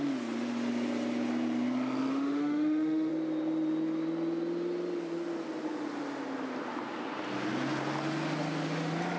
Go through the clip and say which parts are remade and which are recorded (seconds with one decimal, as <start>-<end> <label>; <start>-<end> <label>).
0.0-2.1 recorded; 2.1-3.1 remade; 3.1-9.2 recorded